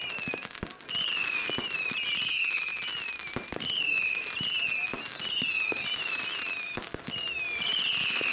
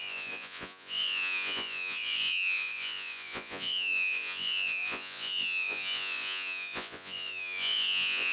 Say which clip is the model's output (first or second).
second